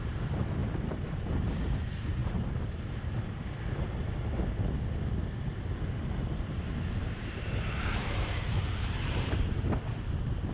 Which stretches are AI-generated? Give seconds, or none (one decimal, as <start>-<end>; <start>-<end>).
0.6-1.8; 7.0-9.6